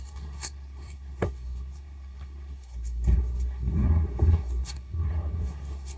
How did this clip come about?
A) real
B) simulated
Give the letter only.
B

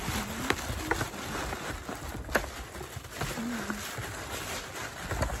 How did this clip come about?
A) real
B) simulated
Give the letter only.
A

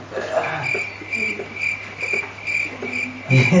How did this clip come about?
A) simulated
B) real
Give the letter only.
B